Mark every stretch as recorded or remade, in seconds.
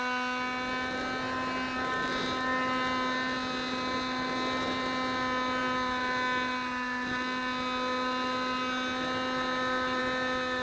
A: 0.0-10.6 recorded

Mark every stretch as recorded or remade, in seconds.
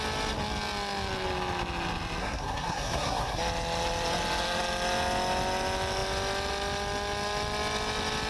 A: 0.0-2.2 recorded; 2.2-3.4 remade; 3.4-8.3 recorded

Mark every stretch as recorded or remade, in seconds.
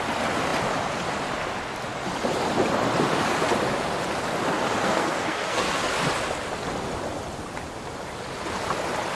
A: 0.0-4.8 recorded; 4.8-5.9 remade; 5.9-9.2 recorded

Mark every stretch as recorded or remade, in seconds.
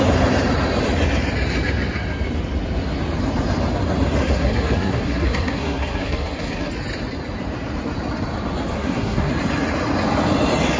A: 0.0-4.2 recorded; 4.2-6.7 remade; 6.7-8.7 recorded; 8.7-9.3 remade; 9.3-10.8 recorded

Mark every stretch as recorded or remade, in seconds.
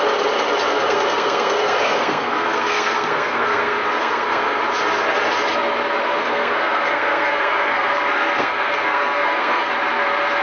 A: 0.0-0.7 recorded; 0.7-4.6 remade; 4.6-6.0 recorded; 6.0-9.7 remade; 9.7-10.4 recorded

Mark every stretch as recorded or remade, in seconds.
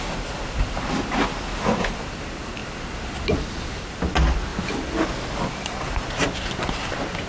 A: 0.0-7.3 recorded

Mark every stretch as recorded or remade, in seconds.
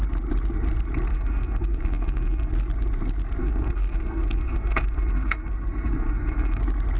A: 0.0-1.1 recorded; 1.1-2.5 remade; 2.5-3.4 recorded; 3.4-6.6 remade; 6.6-7.0 recorded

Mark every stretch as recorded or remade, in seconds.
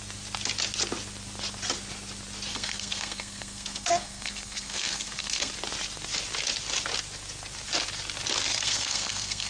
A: 0.0-2.5 recorded; 2.5-5.5 remade; 5.5-8.5 recorded; 8.5-9.5 remade